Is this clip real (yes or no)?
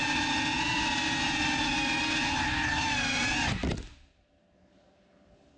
yes